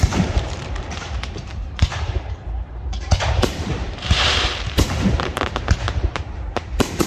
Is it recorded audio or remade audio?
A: remade